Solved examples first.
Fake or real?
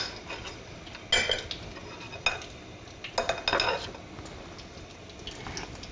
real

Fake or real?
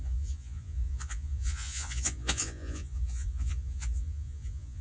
fake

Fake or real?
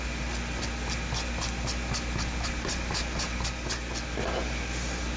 real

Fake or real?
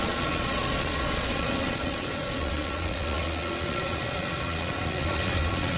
fake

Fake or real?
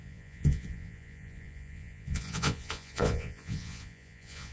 fake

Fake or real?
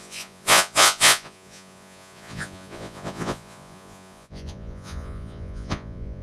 fake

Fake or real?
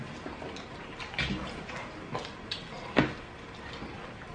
real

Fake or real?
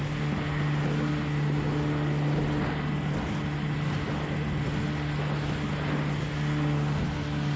real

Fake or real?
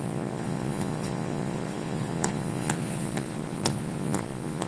fake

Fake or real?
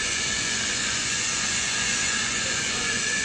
fake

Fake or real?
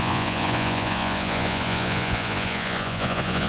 fake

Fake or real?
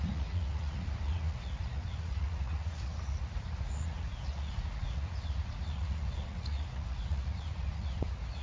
fake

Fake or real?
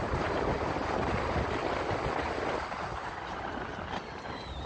real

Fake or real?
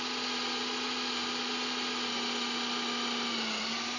real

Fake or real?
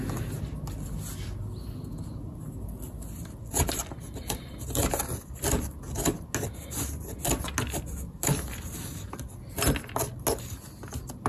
real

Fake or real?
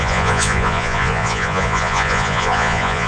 fake